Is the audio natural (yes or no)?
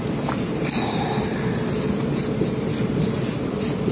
yes